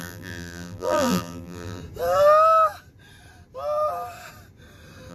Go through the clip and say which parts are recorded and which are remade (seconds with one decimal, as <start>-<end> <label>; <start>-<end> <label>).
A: 0.0-1.8 remade; 1.8-5.1 recorded